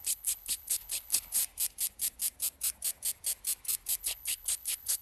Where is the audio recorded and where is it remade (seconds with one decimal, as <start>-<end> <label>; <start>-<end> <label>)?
0.0-1.4 remade; 1.4-4.0 recorded; 4.0-5.0 remade